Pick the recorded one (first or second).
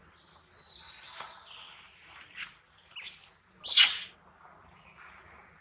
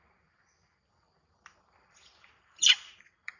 first